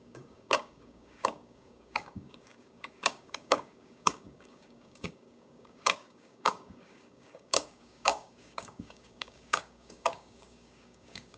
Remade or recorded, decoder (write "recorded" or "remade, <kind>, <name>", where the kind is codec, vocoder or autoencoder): remade, codec, DAC